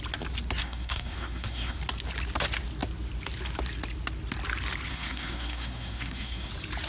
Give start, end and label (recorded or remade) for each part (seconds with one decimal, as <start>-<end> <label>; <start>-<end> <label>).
0.0-0.6 recorded; 0.6-1.8 remade; 1.8-4.9 recorded; 4.9-6.5 remade; 6.5-6.9 recorded